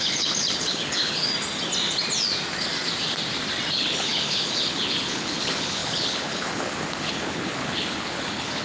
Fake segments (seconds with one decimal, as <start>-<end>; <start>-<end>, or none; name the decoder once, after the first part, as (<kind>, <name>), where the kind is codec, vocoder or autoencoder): 0.0-1.3 (codec, HILCodec); 3.7-8.6